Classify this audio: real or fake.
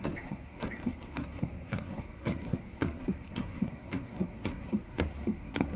fake